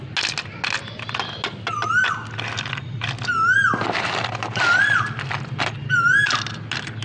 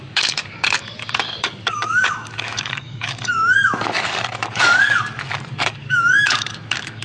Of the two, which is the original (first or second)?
first